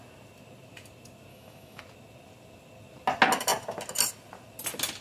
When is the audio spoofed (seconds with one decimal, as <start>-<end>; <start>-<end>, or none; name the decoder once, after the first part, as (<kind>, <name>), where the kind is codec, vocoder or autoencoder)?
1.3-1.8 (autoencoder, DAC-VAE)